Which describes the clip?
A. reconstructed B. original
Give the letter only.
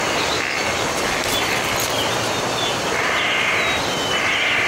B